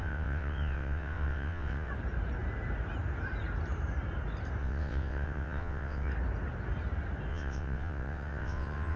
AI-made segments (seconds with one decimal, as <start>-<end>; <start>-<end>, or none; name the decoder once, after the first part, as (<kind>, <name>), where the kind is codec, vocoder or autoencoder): 0.0-1.9 (vocoder, WaveNeXt); 4.6-6.1; 7.3-9.0